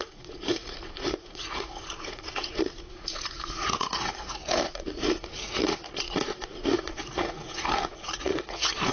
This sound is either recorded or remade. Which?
remade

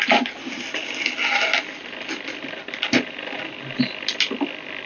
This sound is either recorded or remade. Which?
recorded